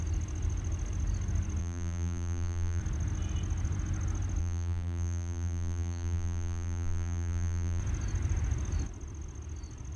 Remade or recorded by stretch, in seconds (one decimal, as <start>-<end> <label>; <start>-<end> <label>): 0.0-1.6 recorded; 1.6-2.8 remade; 2.8-4.4 recorded; 4.4-7.8 remade; 7.8-10.0 recorded